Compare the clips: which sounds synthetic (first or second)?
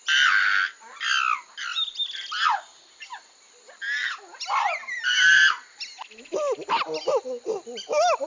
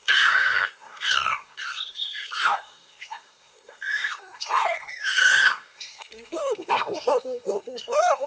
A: second